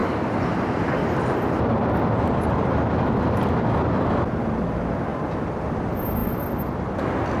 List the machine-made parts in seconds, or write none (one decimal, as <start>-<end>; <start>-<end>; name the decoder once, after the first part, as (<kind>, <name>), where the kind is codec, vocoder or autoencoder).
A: none